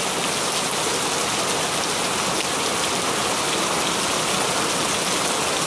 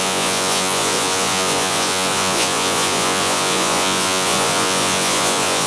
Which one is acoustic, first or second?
first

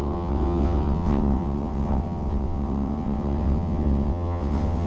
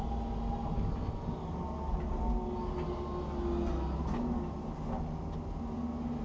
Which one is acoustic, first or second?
second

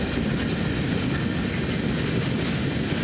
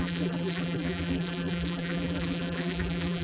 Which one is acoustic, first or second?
first